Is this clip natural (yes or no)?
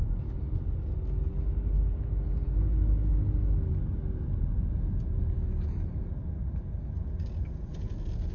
yes